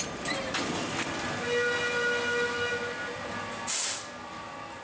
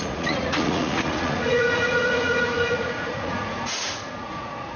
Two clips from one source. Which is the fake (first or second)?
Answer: second